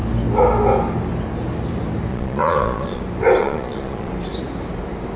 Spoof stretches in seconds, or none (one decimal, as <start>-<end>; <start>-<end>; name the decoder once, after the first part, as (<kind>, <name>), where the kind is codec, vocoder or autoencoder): 2.1-3.0 (vocoder, Vocos); 3.4-4.1